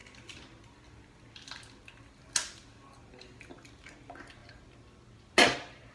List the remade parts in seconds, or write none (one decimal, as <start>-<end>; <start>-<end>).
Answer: none